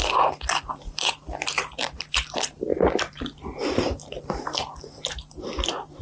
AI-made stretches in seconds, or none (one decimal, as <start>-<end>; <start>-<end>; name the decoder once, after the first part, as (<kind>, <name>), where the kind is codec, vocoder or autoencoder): 0.6-2.7 (vocoder, BigVGAN v2); 4.8-6.0